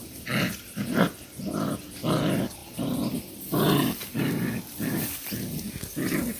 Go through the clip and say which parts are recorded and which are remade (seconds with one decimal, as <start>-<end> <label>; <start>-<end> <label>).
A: 0.0-2.6 recorded; 2.6-6.4 remade